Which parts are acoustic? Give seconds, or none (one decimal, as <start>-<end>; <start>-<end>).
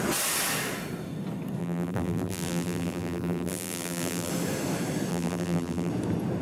0.0-1.6; 4.3-5.1; 5.9-6.4